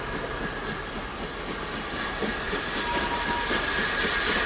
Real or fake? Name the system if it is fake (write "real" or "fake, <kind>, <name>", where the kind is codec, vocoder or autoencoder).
real